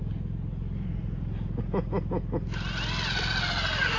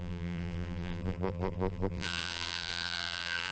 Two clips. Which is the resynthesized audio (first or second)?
second